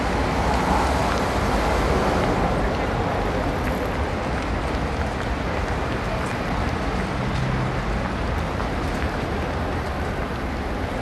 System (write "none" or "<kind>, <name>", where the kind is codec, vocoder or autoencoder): none